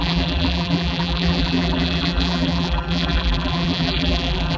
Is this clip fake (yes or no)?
yes